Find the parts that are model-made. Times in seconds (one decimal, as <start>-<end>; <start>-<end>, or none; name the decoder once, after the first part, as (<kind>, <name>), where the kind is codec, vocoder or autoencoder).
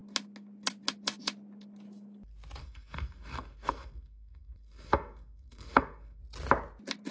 2.6-6.2 (codec, SNAC)